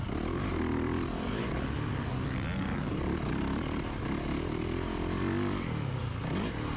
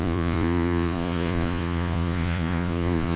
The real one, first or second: first